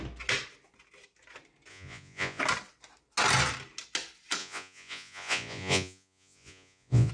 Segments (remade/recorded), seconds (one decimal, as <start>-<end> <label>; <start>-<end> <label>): 0.0-1.7 recorded; 1.7-2.4 remade; 2.4-4.4 recorded; 4.4-7.1 remade